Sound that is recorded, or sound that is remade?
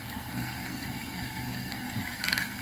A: remade